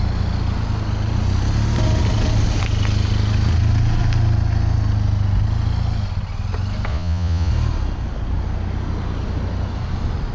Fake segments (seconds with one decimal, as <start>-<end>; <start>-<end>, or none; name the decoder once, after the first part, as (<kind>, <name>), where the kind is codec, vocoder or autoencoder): 6.9-7.5 (vocoder, Vocos)